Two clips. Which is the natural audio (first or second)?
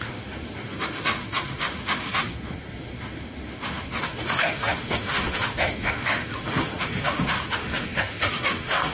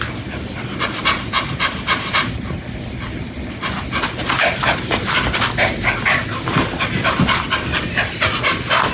second